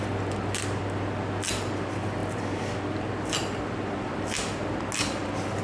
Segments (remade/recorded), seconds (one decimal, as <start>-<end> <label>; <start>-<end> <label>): 0.0-5.6 recorded